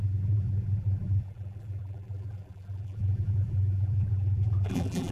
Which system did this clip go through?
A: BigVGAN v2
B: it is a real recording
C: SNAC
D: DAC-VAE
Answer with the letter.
A